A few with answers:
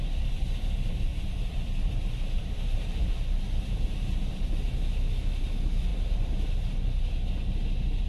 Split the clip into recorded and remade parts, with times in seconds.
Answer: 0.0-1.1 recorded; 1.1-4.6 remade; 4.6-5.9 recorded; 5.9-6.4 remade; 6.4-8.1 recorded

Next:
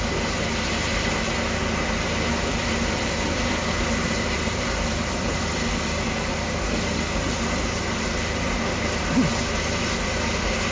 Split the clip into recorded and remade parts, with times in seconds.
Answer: 0.0-2.5 recorded; 2.5-6.5 remade; 6.5-10.7 recorded

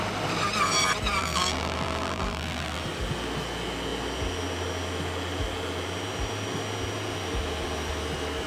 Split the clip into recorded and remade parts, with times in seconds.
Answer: 0.0-1.2 recorded; 1.2-2.8 remade; 2.8-8.5 recorded

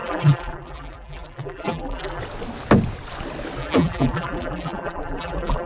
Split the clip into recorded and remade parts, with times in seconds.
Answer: 0.0-2.2 remade; 2.2-3.6 recorded; 3.6-5.7 remade

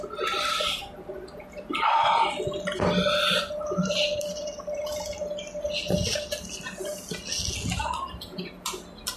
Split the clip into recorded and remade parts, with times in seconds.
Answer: 0.0-0.8 remade; 0.8-3.4 recorded; 3.4-5.2 remade; 5.2-9.2 recorded